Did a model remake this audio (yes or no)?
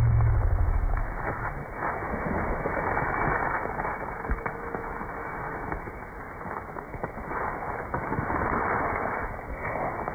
yes